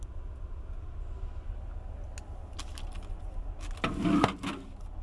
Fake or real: real